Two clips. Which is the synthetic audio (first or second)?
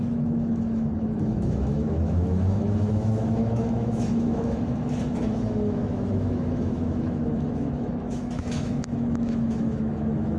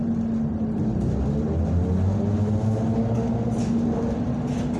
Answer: first